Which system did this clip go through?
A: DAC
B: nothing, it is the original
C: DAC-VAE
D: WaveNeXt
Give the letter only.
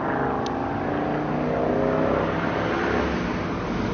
B